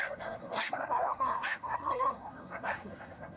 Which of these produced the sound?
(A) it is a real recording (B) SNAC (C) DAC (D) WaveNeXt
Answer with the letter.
B